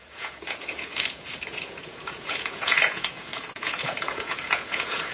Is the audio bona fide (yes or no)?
no